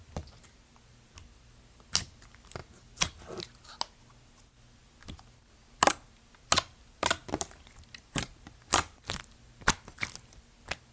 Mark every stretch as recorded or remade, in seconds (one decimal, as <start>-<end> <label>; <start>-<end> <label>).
0.0-10.9 recorded